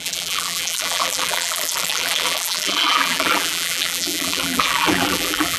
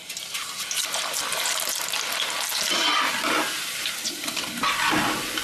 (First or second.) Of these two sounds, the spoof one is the first